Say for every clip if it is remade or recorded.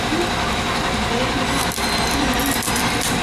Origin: recorded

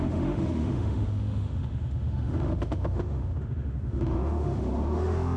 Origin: remade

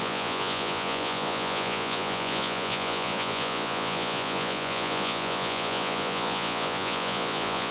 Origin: remade